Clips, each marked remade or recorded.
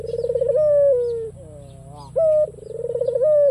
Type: recorded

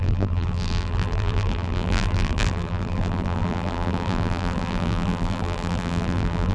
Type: remade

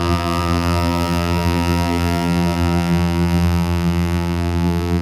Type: remade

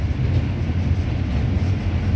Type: recorded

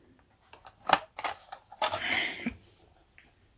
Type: remade